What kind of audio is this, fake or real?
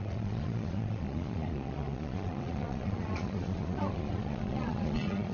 fake